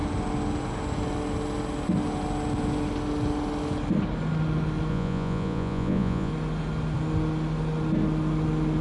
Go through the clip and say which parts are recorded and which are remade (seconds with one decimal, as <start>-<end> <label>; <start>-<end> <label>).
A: 0.0-4.9 recorded; 4.9-6.3 remade; 6.3-8.8 recorded